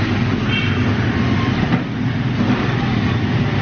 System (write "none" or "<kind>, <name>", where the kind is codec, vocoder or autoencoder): none